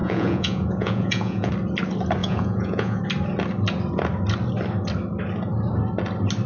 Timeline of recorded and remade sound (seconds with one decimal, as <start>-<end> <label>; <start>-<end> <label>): 0.0-1.5 remade; 1.5-2.2 recorded; 2.2-3.0 remade; 3.0-6.5 recorded

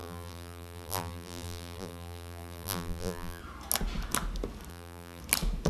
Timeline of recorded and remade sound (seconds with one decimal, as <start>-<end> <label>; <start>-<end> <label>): 0.0-3.4 remade; 3.4-4.7 recorded; 4.7-5.2 remade; 5.2-5.7 recorded

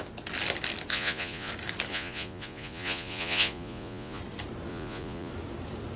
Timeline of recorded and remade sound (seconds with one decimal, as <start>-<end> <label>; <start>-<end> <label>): 0.0-0.9 recorded; 0.9-1.5 remade; 1.5-1.9 recorded; 1.9-4.2 remade; 4.2-4.7 recorded; 4.7-5.3 remade; 5.3-6.0 recorded

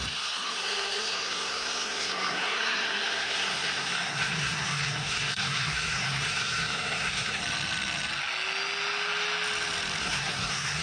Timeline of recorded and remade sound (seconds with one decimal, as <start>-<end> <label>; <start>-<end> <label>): 0.0-7.4 remade; 7.4-10.0 recorded; 10.0-10.8 remade

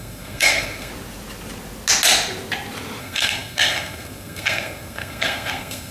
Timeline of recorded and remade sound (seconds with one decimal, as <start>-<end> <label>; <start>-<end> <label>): 0.0-0.9 remade; 0.9-3.0 recorded; 3.0-5.9 remade